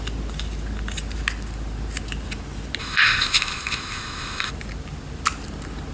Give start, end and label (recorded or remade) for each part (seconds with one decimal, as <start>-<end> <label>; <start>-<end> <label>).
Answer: 0.0-2.8 recorded; 2.8-4.5 remade; 4.5-5.9 recorded